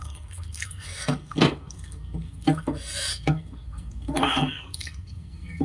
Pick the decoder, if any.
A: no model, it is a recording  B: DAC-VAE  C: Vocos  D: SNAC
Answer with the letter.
D